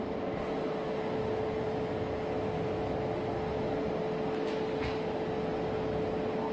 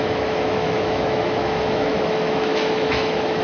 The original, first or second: first